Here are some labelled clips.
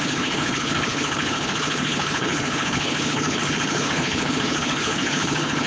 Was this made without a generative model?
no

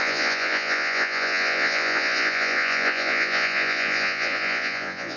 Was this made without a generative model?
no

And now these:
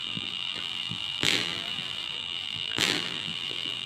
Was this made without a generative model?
no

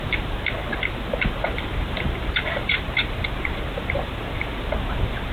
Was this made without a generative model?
no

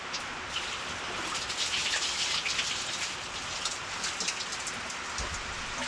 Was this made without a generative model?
yes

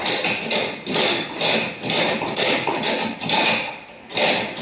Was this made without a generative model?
yes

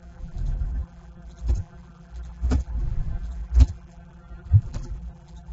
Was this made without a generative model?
no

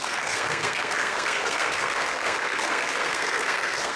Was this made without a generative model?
no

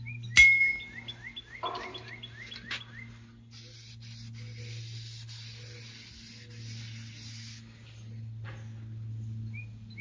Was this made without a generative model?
yes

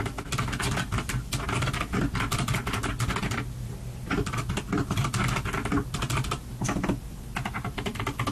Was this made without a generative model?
yes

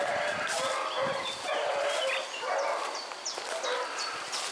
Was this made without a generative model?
yes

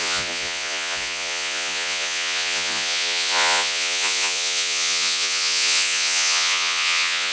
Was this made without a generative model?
no